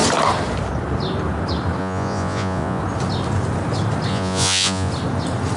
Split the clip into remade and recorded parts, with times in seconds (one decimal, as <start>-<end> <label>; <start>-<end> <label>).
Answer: 0.0-1.8 recorded; 1.8-2.8 remade; 2.8-4.1 recorded; 4.1-4.9 remade; 4.9-5.6 recorded